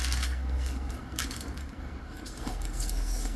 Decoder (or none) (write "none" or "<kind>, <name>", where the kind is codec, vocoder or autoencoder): codec, SNAC